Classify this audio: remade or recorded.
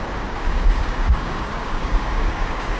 remade